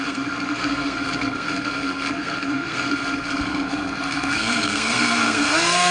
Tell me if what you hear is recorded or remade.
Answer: remade